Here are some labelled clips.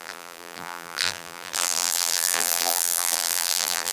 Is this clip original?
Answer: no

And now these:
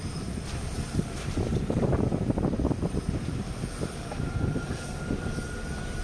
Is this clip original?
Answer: no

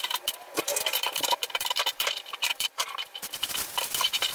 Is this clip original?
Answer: no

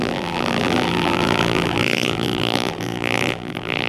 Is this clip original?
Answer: no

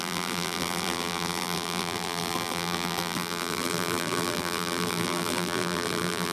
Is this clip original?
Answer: no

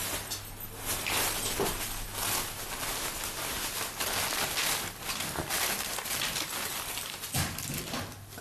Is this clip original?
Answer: yes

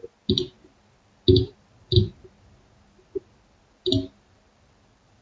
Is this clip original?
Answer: yes